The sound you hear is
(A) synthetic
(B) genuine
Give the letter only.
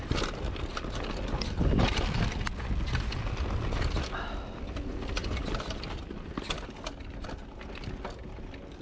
B